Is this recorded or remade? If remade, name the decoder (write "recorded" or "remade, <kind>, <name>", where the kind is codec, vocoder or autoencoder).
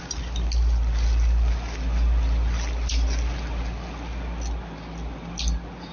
recorded